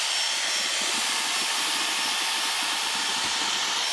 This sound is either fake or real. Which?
real